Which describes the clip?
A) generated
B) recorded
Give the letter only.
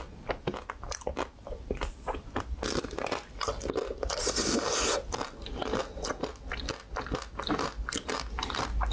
B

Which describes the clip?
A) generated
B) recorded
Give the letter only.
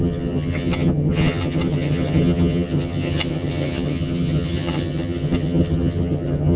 A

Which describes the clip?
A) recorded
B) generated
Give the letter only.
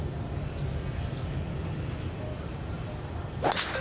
A